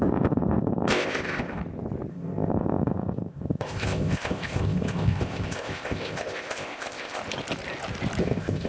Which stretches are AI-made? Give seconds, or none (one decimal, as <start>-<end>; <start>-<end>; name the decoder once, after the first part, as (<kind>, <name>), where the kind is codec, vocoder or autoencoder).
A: 0.0-1.6 (codec, ZipCodec); 2.1-7.2; 8.2-8.7